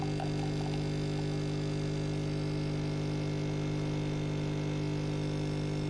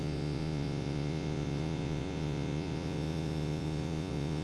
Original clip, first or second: first